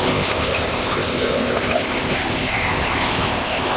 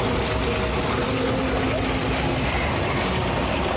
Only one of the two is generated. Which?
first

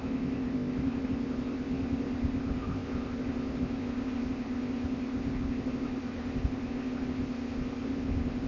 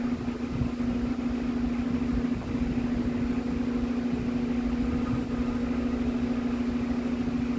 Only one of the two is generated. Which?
first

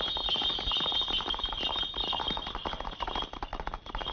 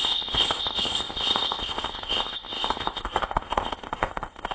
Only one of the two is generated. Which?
second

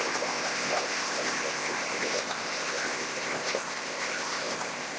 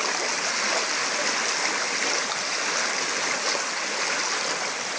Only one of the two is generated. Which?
first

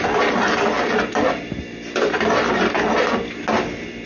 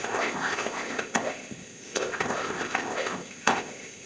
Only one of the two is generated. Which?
second